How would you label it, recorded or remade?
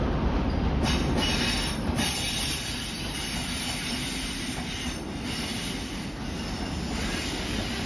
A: recorded